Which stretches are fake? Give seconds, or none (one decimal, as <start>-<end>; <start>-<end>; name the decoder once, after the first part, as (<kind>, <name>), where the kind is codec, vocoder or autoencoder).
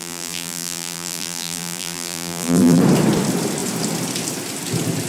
0.0-2.8 (vocoder, BigVGAN v2)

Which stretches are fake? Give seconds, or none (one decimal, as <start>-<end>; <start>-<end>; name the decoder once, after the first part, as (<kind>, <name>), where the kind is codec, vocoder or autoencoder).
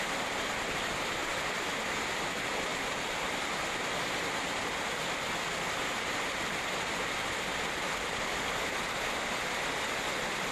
none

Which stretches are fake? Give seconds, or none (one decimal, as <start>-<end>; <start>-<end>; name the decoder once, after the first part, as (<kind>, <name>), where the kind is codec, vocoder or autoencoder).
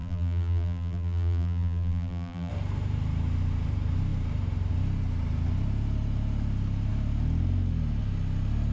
0.0-2.5 (vocoder, BigVGAN v2)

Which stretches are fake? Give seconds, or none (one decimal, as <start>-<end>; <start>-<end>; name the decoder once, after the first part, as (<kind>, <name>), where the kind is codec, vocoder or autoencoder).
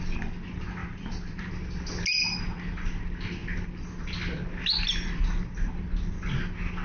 0.8-1.5 (vocoder, BigVGAN v2)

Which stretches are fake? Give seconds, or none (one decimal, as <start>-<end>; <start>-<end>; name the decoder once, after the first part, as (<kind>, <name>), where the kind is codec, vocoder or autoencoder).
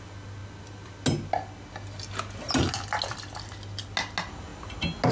none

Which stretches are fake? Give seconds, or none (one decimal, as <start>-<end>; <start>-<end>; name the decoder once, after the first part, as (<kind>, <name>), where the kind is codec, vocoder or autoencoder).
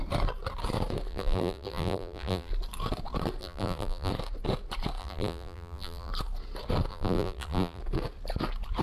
1.1-2.5 (vocoder, BigVGAN v2); 3.4-4.1; 5.0-6.1; 6.9-7.8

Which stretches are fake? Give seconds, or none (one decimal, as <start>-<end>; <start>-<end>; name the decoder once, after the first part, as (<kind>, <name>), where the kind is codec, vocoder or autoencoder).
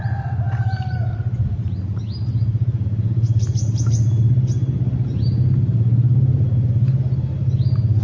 5.1-5.8 (vocoder, BigVGAN v2)